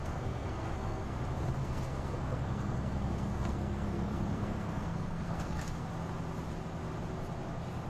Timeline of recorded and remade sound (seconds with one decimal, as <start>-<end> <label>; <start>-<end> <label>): 0.0-1.2 remade; 1.2-1.6 recorded; 1.6-5.9 remade; 5.9-7.9 recorded